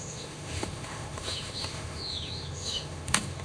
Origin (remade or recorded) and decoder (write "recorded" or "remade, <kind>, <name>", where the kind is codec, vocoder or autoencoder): remade, autoencoder, DAC-VAE